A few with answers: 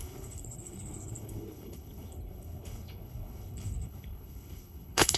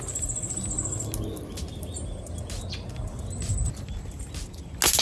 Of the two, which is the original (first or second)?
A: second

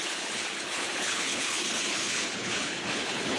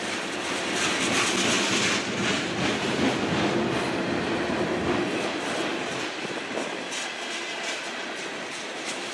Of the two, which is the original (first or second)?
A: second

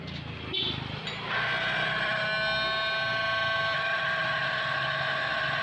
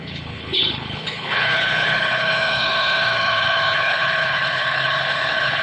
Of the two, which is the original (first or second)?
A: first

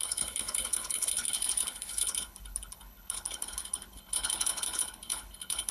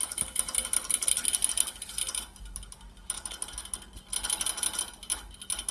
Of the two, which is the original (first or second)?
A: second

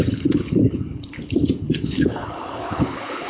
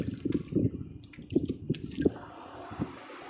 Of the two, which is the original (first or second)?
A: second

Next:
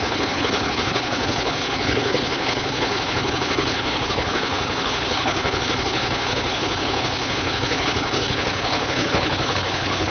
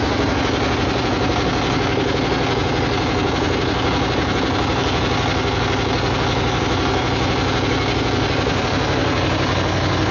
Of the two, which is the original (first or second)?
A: second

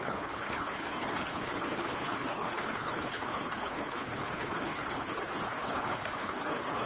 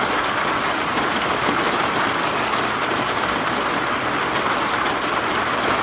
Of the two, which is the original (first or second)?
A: second